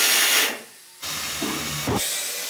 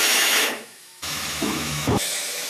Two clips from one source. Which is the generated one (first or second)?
second